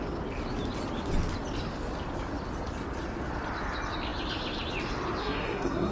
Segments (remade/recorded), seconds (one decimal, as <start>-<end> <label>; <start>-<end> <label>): 0.0-5.2 recorded; 5.2-5.9 remade

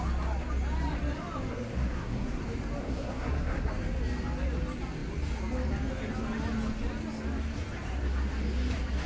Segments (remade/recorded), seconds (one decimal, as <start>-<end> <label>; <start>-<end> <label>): 0.0-1.5 recorded; 1.5-2.4 remade; 2.4-2.8 recorded; 2.8-3.7 remade; 3.7-9.1 recorded

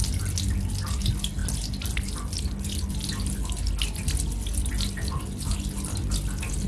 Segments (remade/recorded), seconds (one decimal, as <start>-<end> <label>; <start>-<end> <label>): 0.0-6.7 recorded